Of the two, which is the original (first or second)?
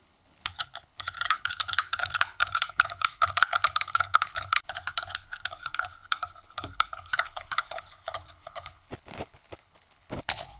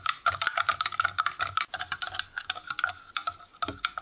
second